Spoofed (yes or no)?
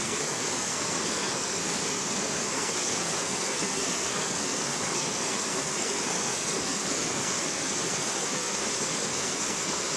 yes